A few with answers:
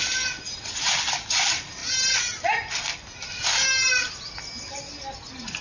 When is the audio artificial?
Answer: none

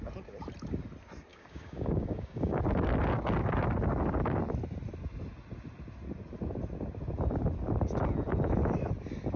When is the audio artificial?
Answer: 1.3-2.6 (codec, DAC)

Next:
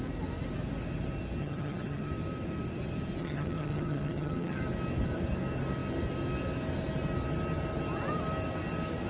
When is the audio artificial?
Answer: 1.4-2.1 (vocoder, HiFi-GAN); 3.2-4.6

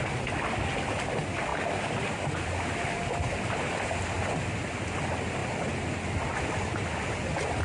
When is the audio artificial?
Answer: none

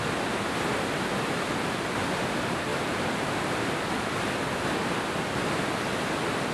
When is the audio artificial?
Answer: 2.7-3.8 (vocoder, BigVGAN v2)

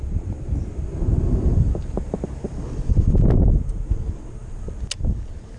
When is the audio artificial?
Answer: none

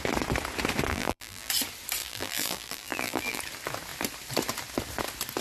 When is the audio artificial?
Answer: 0.9-1.5 (vocoder, BigVGAN v2); 2.0-3.4

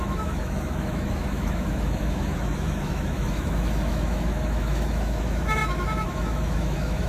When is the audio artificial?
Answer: 0.0-7.1 (autoencoder, DAC-VAE)